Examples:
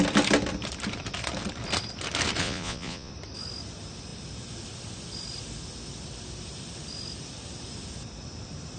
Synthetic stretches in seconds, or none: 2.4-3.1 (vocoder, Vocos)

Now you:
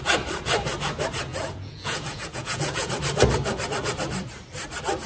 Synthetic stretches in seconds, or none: 1.3-2.9 (vocoder, Vocos)